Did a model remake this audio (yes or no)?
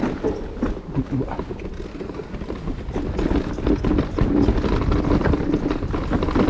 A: no